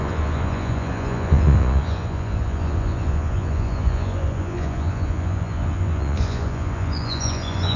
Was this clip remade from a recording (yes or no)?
yes